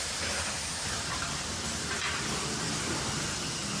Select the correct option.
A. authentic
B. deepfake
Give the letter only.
A